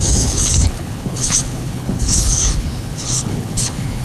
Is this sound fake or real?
fake